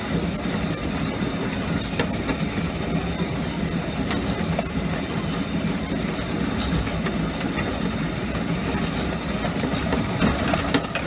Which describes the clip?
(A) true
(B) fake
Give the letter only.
A